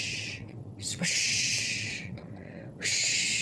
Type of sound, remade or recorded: remade